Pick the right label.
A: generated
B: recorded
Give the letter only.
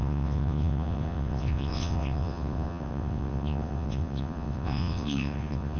A